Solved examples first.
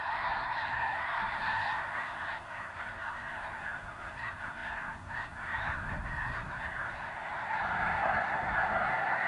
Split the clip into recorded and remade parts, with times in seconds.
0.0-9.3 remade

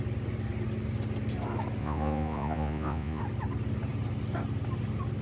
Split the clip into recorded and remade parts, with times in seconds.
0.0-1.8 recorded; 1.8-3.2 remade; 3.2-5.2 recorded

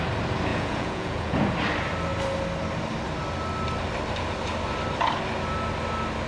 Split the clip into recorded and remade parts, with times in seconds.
0.0-0.5 recorded; 0.5-1.5 remade; 1.5-6.3 recorded